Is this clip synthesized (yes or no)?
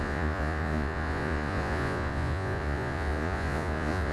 yes